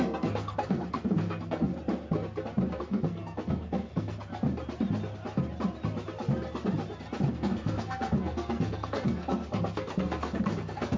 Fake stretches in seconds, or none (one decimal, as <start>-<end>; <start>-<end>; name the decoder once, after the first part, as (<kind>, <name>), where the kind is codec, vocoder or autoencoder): 0.0-1.7 (codec, SNAC); 2.8-4.3; 7.3-11.0